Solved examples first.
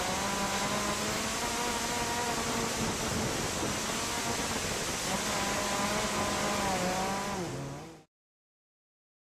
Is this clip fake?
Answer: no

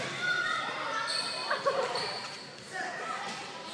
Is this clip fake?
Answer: yes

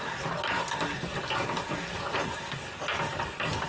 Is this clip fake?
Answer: no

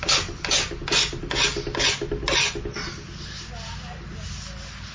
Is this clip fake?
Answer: no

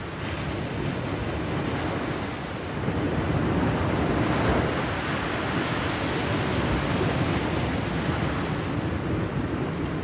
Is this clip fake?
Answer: no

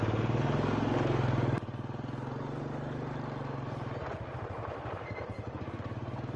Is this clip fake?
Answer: no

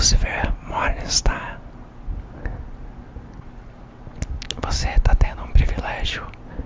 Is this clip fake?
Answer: no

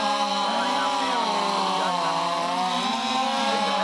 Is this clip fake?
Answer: yes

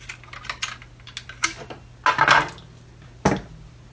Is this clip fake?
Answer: no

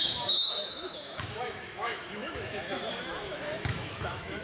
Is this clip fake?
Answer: yes